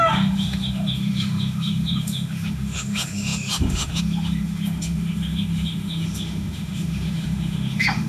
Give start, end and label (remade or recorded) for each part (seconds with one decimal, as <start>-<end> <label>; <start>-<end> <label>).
0.0-8.1 remade